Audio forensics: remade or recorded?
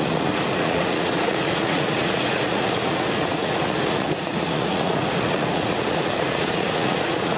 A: remade